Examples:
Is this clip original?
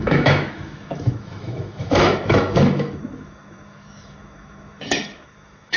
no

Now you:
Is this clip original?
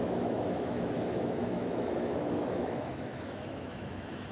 no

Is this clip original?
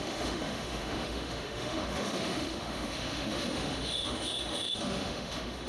no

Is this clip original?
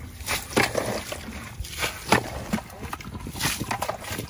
yes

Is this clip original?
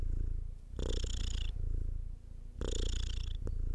yes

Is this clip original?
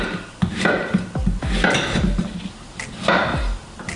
yes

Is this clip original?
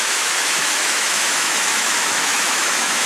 no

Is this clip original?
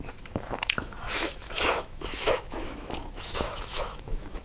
no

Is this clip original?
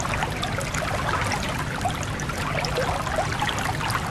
yes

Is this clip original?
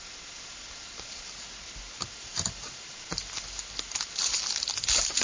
yes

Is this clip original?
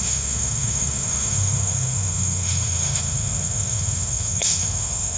no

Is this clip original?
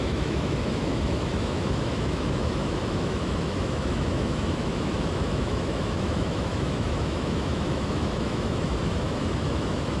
no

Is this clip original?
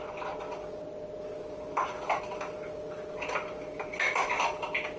yes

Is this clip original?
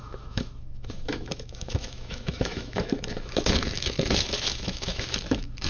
no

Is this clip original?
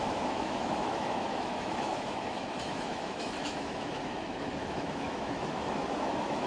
no